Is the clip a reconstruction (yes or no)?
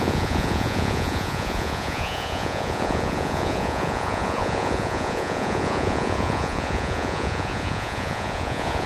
yes